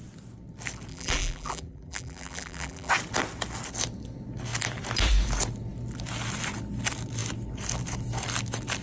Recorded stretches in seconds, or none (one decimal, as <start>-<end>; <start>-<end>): 0.0-0.9; 2.9-8.8